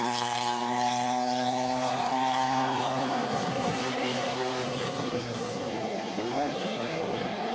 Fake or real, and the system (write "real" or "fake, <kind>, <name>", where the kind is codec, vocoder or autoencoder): fake, codec, SNAC